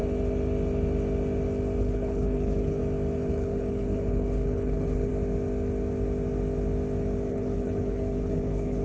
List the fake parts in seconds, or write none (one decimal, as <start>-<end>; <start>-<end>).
1.8-2.8; 3.3-5.1; 7.3-8.8